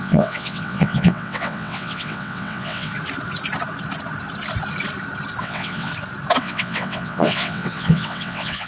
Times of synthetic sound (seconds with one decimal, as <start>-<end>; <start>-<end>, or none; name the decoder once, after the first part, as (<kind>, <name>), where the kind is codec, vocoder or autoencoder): 0.0-2.9 (vocoder, WaveNeXt); 5.4-5.9; 6.4-8.7